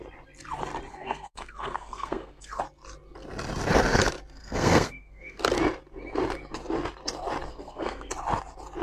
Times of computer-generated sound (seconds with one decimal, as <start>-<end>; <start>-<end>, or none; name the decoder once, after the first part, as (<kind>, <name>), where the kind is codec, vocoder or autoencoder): 0.9-2.6 (codec, SNAC); 4.4-5.4; 7.5-8.1